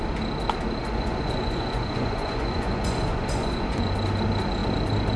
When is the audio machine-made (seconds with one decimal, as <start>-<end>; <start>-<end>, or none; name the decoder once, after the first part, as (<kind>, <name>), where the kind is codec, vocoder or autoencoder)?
0.8-3.9 (vocoder, Vocos)